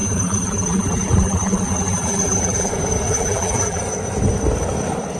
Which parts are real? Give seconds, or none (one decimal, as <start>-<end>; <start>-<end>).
2.7-3.1; 3.8-5.2